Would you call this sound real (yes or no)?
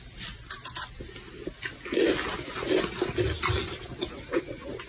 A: yes